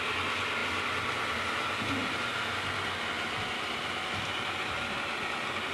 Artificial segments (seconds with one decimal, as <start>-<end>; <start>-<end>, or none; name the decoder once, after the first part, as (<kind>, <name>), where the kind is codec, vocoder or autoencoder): none

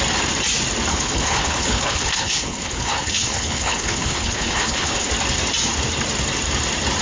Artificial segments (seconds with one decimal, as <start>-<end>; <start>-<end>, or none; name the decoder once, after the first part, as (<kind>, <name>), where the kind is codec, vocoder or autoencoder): 0.9-5.1 (codec, HILCodec)